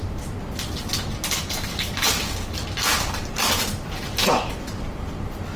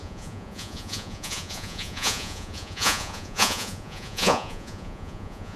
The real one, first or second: first